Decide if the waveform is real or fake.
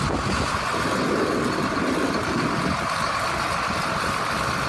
real